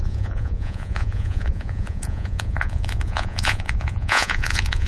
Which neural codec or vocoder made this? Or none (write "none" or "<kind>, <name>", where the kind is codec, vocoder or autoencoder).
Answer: vocoder, Vocos